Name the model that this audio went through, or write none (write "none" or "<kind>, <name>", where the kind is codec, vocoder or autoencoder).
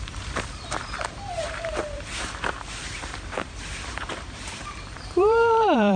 vocoder, BigVGAN v2